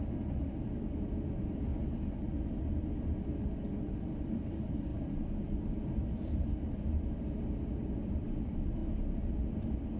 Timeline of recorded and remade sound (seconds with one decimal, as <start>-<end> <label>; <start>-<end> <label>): 0.0-0.4 remade; 0.4-3.9 recorded; 3.9-4.9 remade; 4.9-7.8 recorded; 7.8-8.8 remade; 8.8-9.5 recorded; 9.5-10.0 remade